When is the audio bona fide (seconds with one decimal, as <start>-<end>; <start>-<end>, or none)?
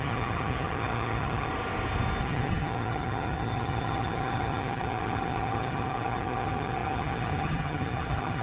1.5-2.2